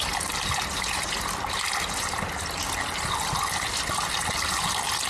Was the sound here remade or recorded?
recorded